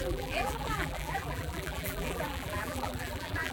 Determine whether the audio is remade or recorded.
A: remade